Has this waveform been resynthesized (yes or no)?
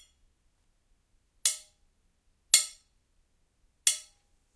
no